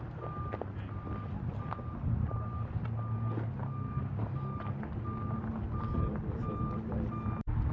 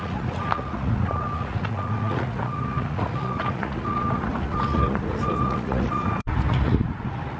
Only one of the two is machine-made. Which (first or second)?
second